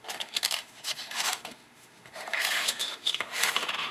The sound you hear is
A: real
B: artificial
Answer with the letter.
B